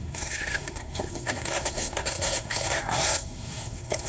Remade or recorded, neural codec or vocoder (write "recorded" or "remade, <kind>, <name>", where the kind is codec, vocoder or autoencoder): remade, codec, SNAC